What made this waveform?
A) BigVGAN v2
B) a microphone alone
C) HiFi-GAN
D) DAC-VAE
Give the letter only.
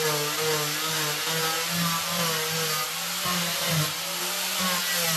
B